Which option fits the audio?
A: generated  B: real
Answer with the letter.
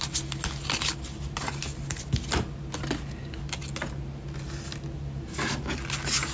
B